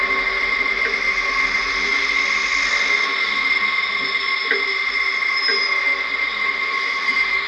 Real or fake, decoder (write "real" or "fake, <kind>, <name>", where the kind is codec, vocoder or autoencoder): real